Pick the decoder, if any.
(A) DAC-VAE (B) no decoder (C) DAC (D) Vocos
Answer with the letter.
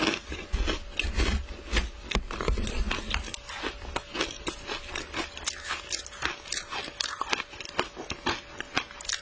B